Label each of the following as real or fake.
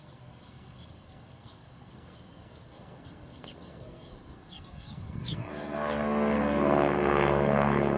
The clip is fake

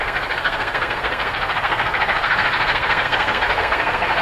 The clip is fake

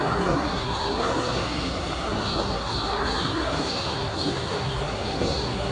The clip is fake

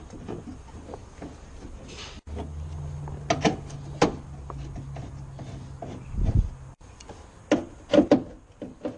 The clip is real